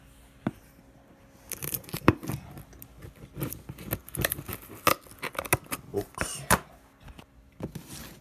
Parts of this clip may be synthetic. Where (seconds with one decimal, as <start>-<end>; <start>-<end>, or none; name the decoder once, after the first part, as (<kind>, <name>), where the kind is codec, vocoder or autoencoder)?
1.6-2.3 (vocoder, BigVGAN v2); 4.0-4.5; 5.9-6.7